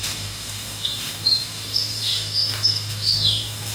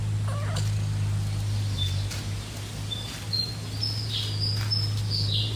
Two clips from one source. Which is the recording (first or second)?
second